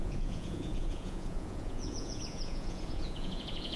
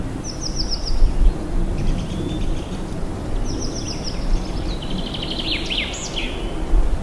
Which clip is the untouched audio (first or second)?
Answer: second